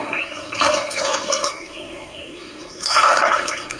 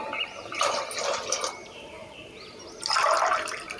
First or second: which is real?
second